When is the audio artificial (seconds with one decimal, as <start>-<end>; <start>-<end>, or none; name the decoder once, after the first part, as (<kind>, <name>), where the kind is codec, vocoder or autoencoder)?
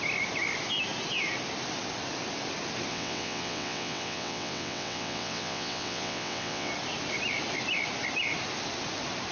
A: 2.9-6.7 (vocoder, WaveNeXt)